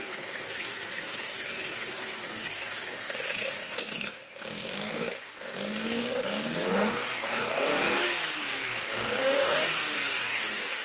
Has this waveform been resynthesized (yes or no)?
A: yes